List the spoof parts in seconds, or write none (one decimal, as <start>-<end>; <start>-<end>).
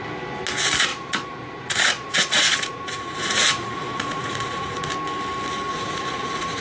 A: 0.9-4.9; 5.7-6.6